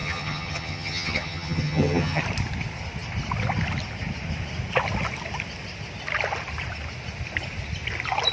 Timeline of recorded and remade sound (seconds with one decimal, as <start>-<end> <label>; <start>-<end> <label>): 0.0-2.2 remade; 2.2-8.3 recorded